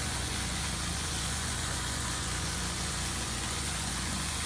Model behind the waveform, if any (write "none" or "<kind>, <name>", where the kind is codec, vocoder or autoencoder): vocoder, Vocos